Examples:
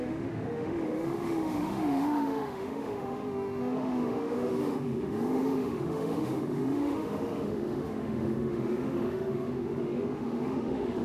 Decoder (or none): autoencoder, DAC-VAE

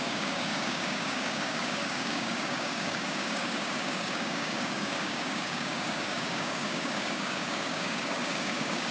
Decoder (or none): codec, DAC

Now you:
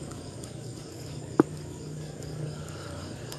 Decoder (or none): codec, DAC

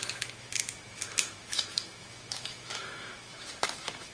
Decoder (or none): autoencoder, DAC-VAE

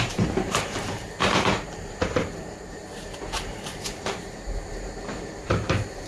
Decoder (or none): vocoder, BigVGAN v2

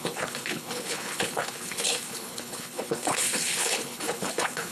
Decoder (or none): codec, HILCodec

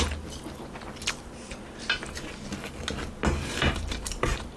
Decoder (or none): none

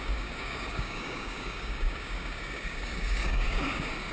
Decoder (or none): codec, DAC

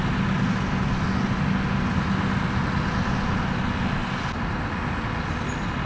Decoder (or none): none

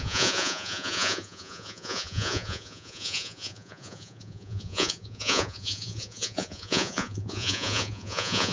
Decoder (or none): vocoder, Vocos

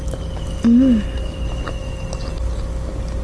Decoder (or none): none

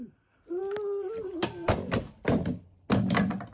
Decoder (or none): none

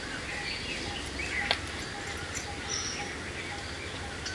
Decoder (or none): none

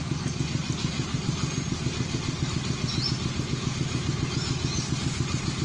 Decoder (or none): none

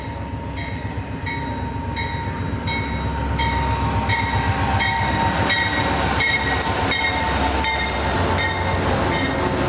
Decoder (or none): none